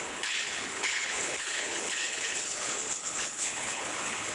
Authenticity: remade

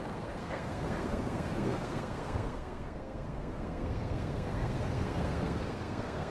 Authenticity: remade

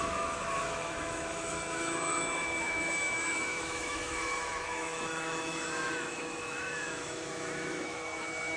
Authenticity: remade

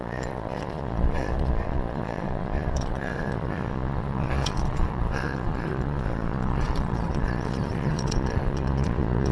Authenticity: remade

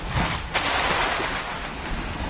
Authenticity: recorded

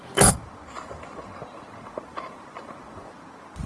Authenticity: remade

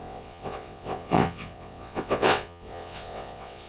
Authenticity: remade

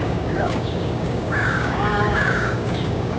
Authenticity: remade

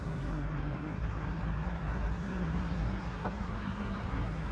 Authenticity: remade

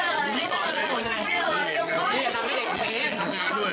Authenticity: remade